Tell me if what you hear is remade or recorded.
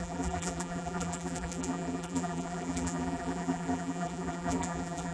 remade